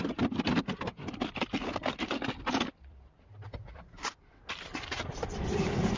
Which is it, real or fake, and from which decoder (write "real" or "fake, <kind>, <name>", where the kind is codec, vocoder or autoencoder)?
real